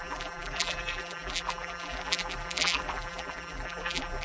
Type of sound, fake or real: fake